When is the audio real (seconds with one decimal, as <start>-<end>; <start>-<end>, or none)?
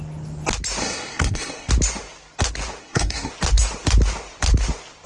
0.0-0.8; 1.7-2.8; 3.3-5.1